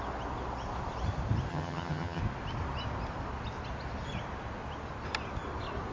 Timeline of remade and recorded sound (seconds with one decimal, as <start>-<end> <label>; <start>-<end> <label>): 0.0-1.5 recorded; 1.5-2.2 remade; 2.2-5.9 recorded